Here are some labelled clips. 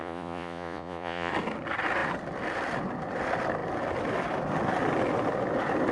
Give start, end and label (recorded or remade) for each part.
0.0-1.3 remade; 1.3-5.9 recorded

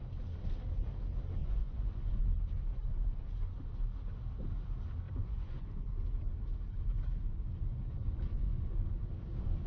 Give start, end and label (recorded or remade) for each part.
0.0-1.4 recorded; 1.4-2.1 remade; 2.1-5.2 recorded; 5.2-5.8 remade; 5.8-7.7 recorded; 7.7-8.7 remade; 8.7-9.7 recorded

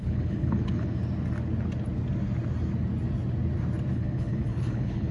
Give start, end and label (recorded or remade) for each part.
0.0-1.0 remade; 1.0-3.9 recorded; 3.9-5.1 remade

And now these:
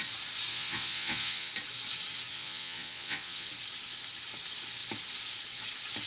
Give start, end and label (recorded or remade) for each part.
0.0-0.5 recorded; 0.5-1.5 remade; 1.5-2.3 recorded; 2.3-3.5 remade; 3.5-6.1 recorded

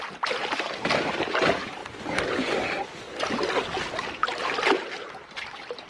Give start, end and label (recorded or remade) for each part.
0.0-5.9 recorded